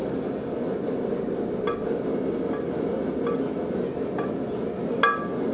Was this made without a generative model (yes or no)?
yes